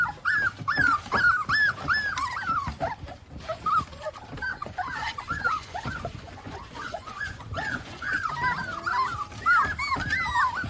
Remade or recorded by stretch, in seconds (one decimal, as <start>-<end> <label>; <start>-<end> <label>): 0.0-4.5 recorded; 4.5-8.3 remade; 8.3-10.7 recorded